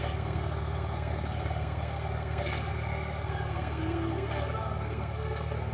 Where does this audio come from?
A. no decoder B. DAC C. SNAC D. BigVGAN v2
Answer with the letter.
C